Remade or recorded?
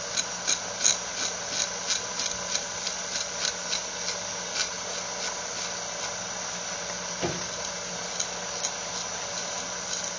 recorded